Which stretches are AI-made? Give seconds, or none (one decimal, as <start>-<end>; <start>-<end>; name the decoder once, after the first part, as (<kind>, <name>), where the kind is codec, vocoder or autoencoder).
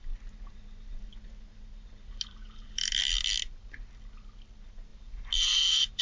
2.4-3.0 (vocoder, BigVGAN v2); 4.9-6.0